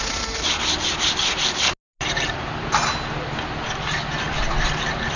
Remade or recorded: recorded